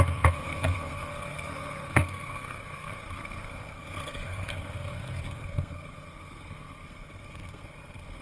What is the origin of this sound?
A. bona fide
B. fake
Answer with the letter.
B